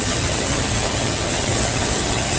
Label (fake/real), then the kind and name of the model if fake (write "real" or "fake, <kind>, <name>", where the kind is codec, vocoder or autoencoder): fake, vocoder, HiFi-GAN